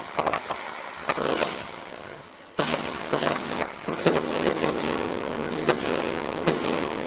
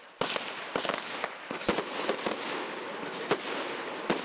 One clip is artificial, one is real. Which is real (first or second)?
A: second